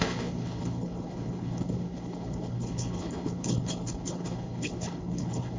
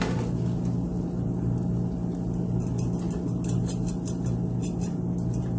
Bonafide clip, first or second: second